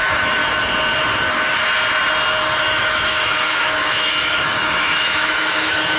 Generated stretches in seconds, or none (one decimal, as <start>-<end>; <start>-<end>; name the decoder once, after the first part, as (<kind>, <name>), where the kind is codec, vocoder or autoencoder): 0.0-0.4 (autoencoder, DAC-VAE); 2.6-6.0